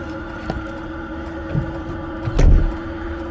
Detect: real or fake real